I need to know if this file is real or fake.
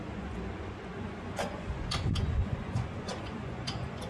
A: fake